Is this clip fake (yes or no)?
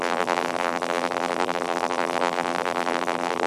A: yes